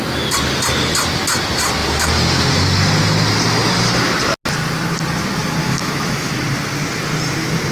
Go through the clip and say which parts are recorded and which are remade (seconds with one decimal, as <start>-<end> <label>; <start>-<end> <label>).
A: 0.0-5.6 recorded; 5.6-6.3 remade; 6.3-7.7 recorded